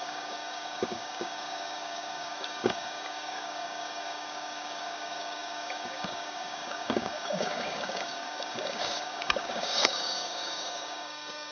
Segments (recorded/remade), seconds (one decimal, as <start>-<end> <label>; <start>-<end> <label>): 0.0-11.5 remade